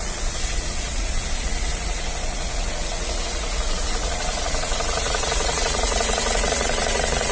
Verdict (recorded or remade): remade